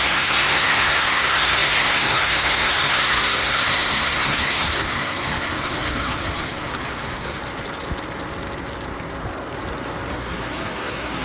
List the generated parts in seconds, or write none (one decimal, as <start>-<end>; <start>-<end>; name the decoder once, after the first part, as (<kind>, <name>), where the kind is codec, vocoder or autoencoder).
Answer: 0.0-7.4 (codec, SNAC); 10.1-11.2